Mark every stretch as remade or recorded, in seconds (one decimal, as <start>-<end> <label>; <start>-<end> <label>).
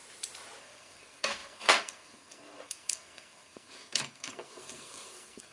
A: 0.0-0.6 recorded; 0.6-5.5 remade